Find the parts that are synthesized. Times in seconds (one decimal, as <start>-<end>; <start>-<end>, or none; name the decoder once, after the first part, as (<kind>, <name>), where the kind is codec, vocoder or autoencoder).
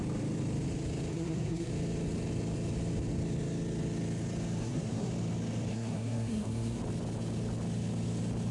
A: 1.1-1.7 (codec, SNAC); 4.6-5.1; 5.7-6.8